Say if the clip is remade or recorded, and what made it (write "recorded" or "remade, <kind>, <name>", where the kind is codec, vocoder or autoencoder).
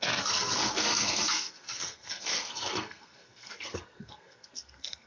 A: remade, codec, SNAC